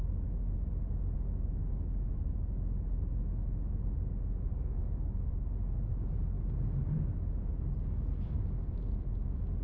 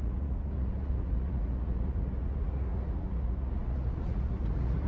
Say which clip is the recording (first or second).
first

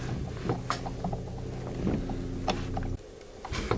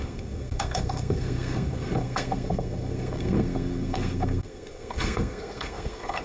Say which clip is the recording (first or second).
first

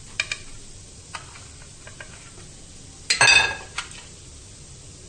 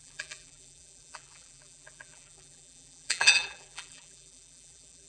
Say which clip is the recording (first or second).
first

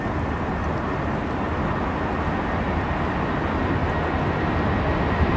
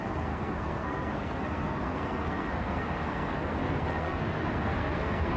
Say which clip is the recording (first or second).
first